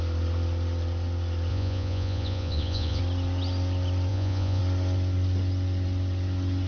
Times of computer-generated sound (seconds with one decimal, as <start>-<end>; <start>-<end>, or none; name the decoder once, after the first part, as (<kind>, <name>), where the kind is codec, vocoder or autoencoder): 1.5-3.0 (vocoder, Vocos); 4.1-4.6